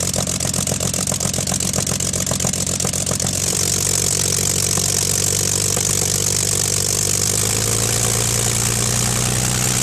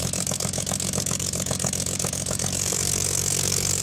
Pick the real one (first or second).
first